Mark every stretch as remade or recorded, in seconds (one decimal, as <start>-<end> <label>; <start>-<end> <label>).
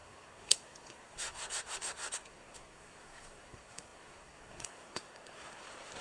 0.0-6.0 remade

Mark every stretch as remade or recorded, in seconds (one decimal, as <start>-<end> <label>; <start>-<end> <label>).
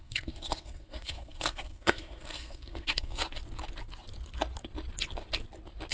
0.0-3.2 remade; 3.2-5.9 recorded